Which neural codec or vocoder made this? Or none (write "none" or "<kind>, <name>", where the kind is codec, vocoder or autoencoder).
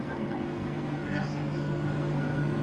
codec, SNAC